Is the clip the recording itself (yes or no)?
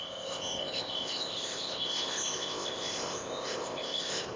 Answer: no